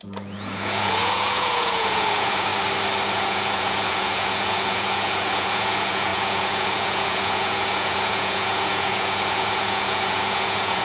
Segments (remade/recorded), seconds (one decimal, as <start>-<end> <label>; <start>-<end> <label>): 0.0-2.5 remade; 2.5-3.1 recorded; 3.1-10.8 remade